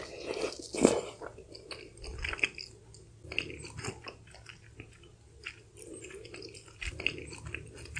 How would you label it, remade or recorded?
recorded